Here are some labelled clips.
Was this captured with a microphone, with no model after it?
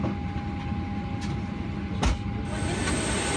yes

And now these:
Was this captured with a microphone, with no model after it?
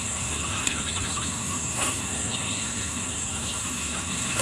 no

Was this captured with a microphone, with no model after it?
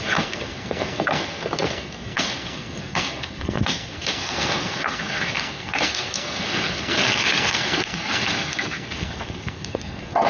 no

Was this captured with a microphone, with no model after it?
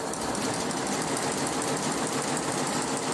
yes